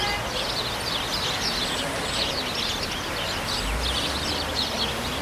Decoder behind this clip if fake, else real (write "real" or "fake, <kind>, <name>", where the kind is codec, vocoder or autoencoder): real